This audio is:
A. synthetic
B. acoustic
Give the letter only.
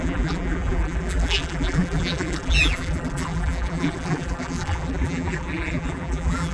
A